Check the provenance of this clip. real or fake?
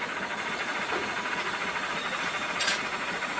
fake